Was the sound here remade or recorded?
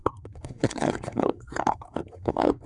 remade